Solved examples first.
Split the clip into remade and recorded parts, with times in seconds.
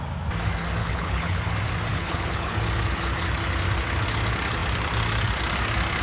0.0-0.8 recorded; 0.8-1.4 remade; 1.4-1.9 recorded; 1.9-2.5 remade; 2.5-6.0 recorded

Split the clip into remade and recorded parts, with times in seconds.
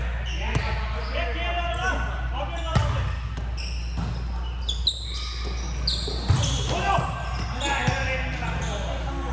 0.0-9.3 recorded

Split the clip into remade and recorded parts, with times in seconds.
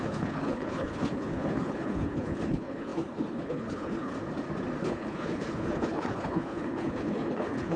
0.0-4.1 remade; 4.1-4.8 recorded; 4.8-7.8 remade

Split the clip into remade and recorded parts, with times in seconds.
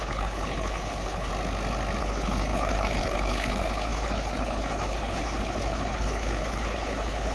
0.0-1.3 remade; 1.3-2.0 recorded; 2.0-7.3 remade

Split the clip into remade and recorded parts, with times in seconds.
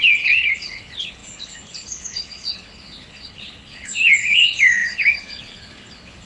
0.0-6.3 remade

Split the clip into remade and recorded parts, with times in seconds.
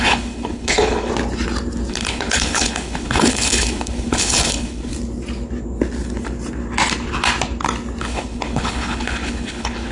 0.0-1.1 remade; 1.1-1.9 recorded; 1.9-4.9 remade; 4.9-8.0 recorded; 8.0-9.9 remade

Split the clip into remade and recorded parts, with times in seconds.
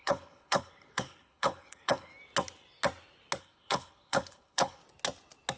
0.0-2.1 remade; 2.1-3.4 recorded; 3.4-4.8 remade; 4.8-5.6 recorded